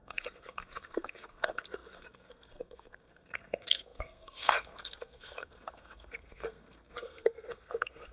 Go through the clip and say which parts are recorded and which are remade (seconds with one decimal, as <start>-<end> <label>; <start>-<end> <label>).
0.0-8.1 remade